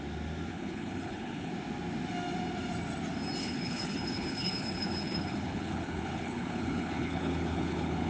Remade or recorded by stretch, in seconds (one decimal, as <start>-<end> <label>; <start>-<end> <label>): 0.0-0.5 recorded; 0.5-1.5 remade; 1.5-3.4 recorded; 3.4-8.1 remade